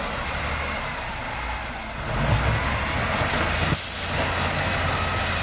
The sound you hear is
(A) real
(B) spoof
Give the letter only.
A